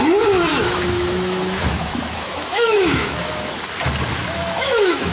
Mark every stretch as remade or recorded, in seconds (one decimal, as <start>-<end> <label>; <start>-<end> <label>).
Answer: 0.0-0.5 recorded; 0.5-3.6 remade; 3.6-4.2 recorded; 4.2-5.1 remade